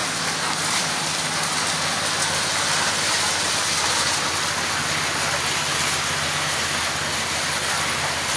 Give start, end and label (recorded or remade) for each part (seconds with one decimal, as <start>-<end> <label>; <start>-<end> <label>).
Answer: 0.0-1.0 remade; 1.0-8.4 recorded